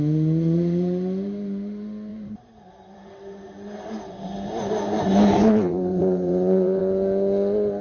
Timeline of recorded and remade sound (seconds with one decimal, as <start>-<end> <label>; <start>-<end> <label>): 0.0-2.1 recorded; 2.1-6.8 remade; 6.8-7.8 recorded

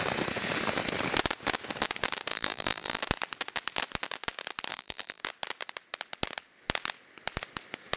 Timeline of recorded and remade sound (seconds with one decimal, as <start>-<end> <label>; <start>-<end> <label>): 0.0-2.3 recorded; 2.3-3.0 remade; 3.0-4.7 recorded; 4.7-5.2 remade; 5.2-8.0 recorded

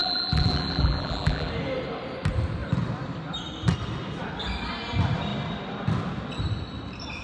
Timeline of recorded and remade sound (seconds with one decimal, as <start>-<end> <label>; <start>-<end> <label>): 0.0-1.5 remade; 1.5-7.2 recorded

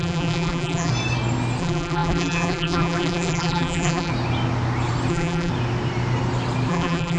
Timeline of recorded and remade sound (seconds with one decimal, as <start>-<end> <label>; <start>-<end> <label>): 0.0-0.9 remade; 0.9-1.6 recorded; 1.6-4.1 remade; 4.1-5.1 recorded; 5.1-5.5 remade; 5.5-6.7 recorded; 6.7-7.2 remade

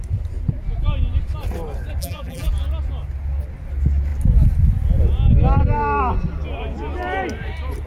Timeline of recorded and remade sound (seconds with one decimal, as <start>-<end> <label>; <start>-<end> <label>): 0.0-2.0 recorded; 2.0-2.5 remade; 2.5-7.9 recorded

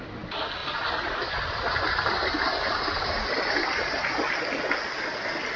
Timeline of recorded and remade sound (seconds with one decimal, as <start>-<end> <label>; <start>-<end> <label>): 0.0-0.6 recorded; 0.6-4.0 remade; 4.0-5.6 recorded

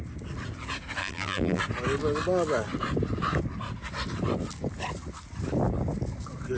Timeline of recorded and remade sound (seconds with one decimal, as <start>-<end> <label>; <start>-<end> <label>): 0.0-1.0 recorded; 1.0-1.6 remade; 1.6-6.6 recorded